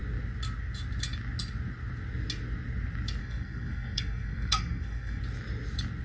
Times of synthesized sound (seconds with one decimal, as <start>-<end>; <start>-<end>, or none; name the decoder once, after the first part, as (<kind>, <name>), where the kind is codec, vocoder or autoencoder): 3.2-5.2 (codec, SNAC)

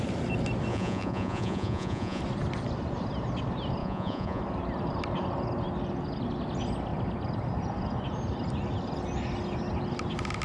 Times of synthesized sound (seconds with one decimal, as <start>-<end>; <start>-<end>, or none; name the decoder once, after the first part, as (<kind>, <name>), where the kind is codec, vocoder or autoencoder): 0.7-2.2 (vocoder, Vocos); 3.8-4.4

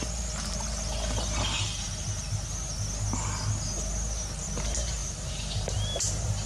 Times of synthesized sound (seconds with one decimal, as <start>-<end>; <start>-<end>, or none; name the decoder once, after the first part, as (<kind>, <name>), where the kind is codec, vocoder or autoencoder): 5.0-6.5 (vocoder, BigVGAN v2)

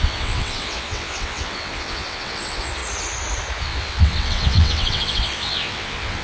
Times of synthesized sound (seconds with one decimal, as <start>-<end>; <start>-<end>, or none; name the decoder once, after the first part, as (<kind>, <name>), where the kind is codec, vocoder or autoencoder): 0.0-2.8 (vocoder, WaveNeXt); 3.6-6.2

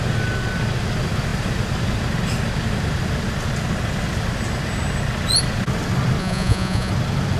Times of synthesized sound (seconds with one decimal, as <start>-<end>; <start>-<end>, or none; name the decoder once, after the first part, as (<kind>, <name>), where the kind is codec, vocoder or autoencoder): 6.2-6.9 (vocoder, Vocos)

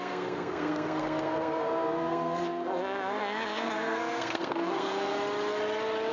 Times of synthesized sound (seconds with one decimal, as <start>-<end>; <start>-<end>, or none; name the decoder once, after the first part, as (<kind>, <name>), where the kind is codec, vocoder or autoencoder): 0.0-5.2 (codec, SNAC)